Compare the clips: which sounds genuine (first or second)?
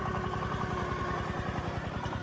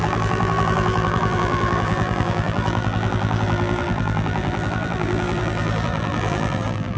first